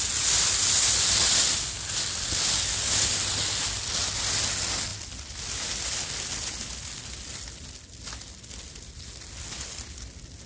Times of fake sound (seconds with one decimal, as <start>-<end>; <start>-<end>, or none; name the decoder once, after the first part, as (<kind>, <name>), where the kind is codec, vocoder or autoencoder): none